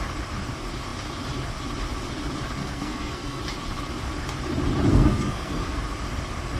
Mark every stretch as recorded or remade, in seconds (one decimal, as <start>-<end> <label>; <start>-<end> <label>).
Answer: 0.0-2.6 recorded; 2.6-3.4 remade; 3.4-4.9 recorded; 4.9-5.8 remade; 5.8-6.6 recorded